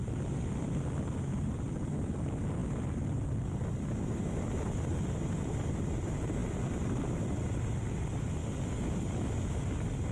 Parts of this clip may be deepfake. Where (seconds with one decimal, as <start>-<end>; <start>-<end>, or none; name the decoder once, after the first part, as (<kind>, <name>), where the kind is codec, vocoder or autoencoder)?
none